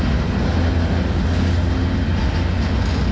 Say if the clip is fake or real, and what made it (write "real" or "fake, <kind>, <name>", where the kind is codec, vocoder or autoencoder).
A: real